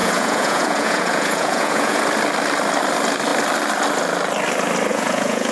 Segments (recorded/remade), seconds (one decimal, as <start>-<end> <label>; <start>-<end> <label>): 0.0-2.0 remade; 2.0-4.9 recorded; 4.9-5.5 remade